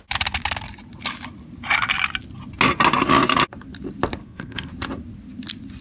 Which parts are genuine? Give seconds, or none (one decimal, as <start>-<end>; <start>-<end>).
0.0-4.2; 4.7-5.8